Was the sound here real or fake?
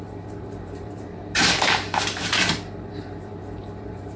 fake